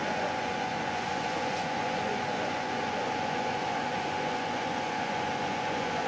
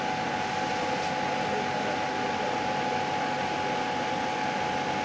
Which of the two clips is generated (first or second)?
first